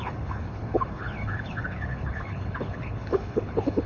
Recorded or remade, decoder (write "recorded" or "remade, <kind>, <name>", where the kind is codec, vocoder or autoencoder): remade, codec, HILCodec